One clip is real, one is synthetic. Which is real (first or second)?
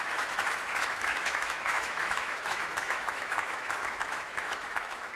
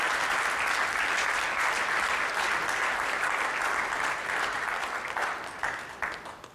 second